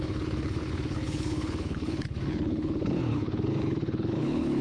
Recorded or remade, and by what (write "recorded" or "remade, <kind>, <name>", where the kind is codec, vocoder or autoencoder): remade, codec, HILCodec